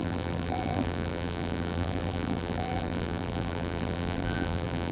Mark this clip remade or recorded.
remade